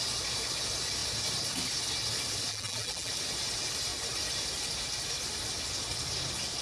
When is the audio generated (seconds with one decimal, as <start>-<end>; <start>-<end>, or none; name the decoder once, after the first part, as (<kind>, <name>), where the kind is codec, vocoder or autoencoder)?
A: 2.5-3.1 (vocoder, BigVGAN v2)